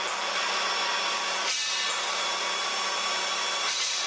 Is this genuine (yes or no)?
no